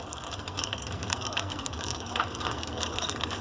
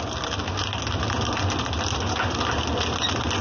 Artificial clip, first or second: first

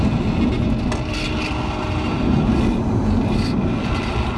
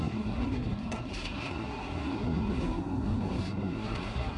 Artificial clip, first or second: second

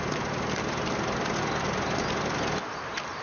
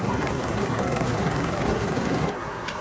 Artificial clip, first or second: second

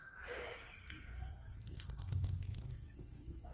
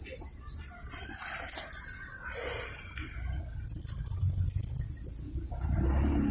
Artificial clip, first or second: first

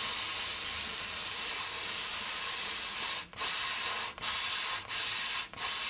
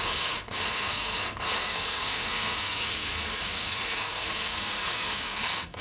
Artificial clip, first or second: second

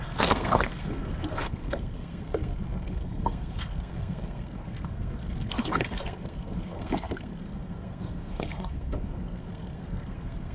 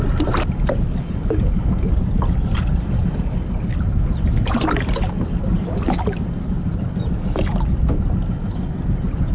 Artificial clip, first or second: first